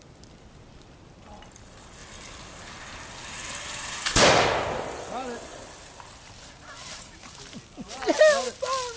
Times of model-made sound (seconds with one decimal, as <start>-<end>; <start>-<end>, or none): none